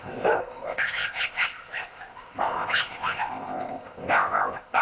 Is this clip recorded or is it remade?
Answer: remade